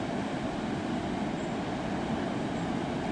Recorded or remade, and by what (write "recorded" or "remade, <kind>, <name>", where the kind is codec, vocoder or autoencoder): recorded